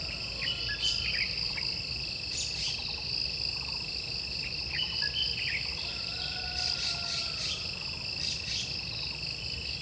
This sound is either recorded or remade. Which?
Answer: recorded